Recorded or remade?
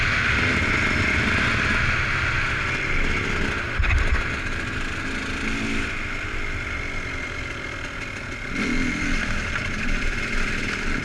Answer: recorded